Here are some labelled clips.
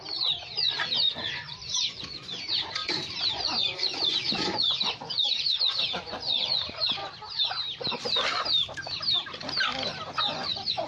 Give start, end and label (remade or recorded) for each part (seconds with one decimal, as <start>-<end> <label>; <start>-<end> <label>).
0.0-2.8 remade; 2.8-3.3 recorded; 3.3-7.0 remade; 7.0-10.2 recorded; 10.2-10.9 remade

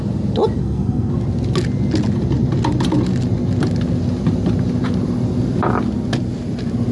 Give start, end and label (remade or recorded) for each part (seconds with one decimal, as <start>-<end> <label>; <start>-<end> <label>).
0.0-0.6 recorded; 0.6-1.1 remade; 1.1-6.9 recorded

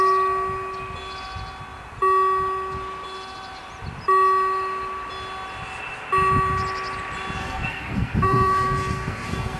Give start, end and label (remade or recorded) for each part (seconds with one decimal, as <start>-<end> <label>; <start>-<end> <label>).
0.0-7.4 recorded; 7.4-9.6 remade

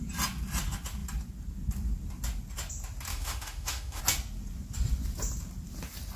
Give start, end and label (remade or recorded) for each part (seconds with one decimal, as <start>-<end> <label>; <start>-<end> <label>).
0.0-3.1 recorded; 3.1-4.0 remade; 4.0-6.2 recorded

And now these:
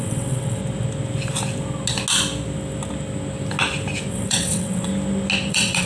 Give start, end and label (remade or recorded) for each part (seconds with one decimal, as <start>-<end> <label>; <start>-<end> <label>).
0.0-0.6 remade; 0.6-4.1 recorded; 4.1-4.9 remade; 4.9-5.5 recorded; 5.5-5.9 remade

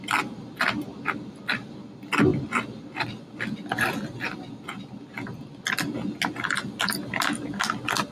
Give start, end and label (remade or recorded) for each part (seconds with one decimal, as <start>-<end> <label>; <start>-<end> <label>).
0.0-8.1 recorded

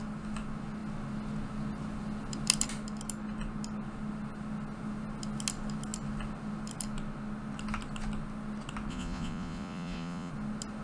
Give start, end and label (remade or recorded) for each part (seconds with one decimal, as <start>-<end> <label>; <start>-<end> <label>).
0.0-8.9 recorded; 8.9-10.3 remade; 10.3-10.8 recorded

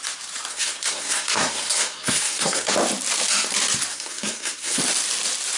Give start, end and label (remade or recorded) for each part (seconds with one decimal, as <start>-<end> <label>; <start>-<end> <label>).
0.0-0.5 recorded; 0.5-2.7 remade; 2.7-3.9 recorded; 3.9-4.8 remade; 4.8-5.6 recorded